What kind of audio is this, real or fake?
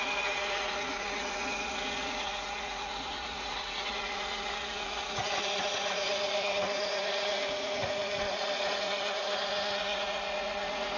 fake